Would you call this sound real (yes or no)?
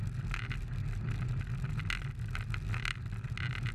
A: yes